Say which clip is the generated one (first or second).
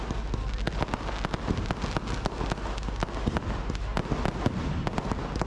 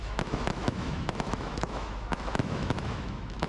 second